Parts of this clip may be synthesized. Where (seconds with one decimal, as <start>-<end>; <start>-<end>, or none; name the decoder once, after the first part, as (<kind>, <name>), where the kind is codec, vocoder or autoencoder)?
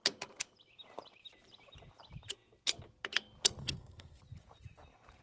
3.6-4.2 (codec, SNAC)